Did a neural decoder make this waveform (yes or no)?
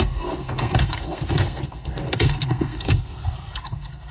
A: yes